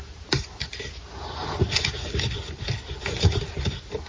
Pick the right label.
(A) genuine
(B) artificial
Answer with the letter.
A